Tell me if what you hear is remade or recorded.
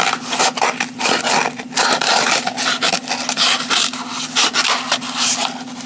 recorded